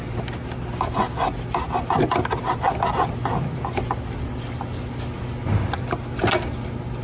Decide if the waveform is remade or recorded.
recorded